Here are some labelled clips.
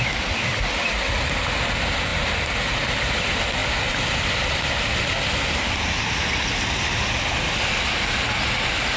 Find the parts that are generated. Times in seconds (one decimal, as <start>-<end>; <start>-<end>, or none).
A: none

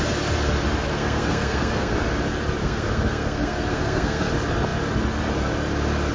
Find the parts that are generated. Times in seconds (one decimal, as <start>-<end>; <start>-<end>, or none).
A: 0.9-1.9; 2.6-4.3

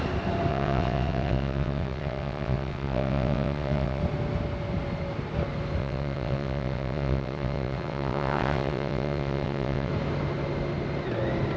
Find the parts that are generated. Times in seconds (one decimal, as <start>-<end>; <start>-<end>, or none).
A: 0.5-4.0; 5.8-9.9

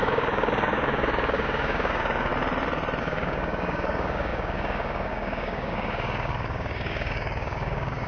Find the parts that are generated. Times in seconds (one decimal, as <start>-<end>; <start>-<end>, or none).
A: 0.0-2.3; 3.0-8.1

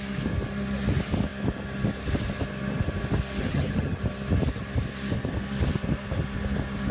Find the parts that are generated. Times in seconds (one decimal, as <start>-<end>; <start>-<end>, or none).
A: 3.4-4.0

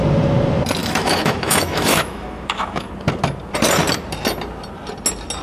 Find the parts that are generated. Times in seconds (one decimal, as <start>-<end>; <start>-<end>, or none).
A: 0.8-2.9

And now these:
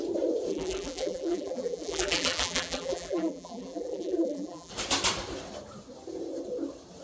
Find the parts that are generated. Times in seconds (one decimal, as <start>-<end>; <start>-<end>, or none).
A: 0.5-4.7